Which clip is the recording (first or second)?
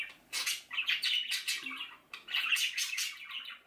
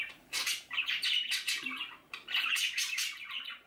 first